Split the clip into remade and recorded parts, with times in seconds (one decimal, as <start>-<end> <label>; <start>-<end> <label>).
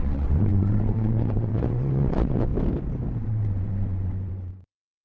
0.0-2.5 remade; 2.5-3.2 recorded; 3.2-5.0 remade